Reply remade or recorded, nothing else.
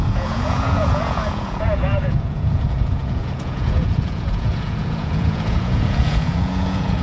remade